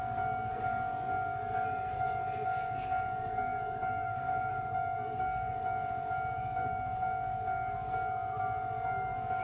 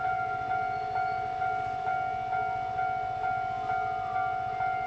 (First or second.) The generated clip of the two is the first